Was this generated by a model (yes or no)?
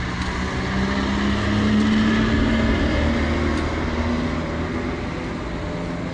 no